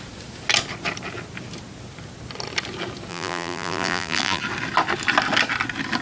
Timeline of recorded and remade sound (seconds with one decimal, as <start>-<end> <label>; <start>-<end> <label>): 0.0-3.1 recorded; 3.1-4.4 remade; 4.4-6.0 recorded